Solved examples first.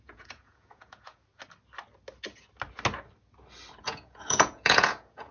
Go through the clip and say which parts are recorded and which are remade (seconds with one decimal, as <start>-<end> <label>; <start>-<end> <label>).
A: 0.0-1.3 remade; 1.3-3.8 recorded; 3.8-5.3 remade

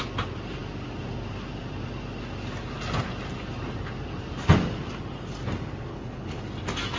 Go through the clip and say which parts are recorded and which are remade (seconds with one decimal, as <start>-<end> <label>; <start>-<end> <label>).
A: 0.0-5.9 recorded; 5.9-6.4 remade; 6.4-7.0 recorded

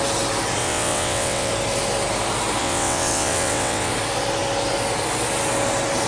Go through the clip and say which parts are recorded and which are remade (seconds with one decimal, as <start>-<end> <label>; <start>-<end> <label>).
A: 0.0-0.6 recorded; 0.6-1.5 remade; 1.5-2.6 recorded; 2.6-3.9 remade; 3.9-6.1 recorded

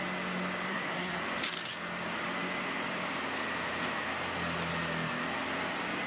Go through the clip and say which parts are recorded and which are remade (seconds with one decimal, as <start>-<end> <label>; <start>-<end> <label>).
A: 0.0-0.7 recorded; 0.7-1.2 remade; 1.2-6.1 recorded